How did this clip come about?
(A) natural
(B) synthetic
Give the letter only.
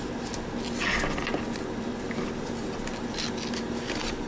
A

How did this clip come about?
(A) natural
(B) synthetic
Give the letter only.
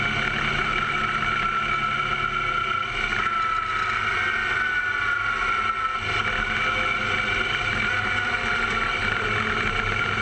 A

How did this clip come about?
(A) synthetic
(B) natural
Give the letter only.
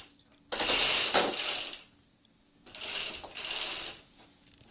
B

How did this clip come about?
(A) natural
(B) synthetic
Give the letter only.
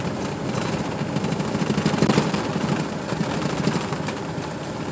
A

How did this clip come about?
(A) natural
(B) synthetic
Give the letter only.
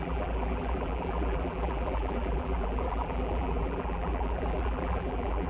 B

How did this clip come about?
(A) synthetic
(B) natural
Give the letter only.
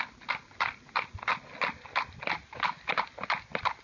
B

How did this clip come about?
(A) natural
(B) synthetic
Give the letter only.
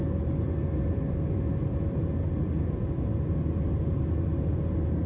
A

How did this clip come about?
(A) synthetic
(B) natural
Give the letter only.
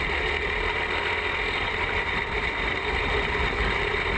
B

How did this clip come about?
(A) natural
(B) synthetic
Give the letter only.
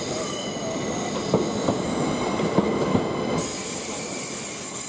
A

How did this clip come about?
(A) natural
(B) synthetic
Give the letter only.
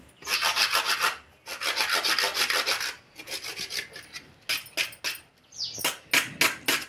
A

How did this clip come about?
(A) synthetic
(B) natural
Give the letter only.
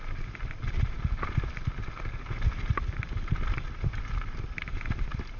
B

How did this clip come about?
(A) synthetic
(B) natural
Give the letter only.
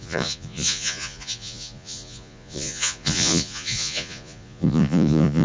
A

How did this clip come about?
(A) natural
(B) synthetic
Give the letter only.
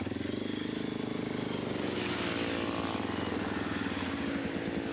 A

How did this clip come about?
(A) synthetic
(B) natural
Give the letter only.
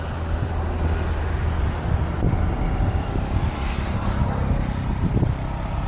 B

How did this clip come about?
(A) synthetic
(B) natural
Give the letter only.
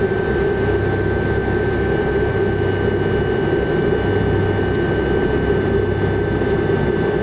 B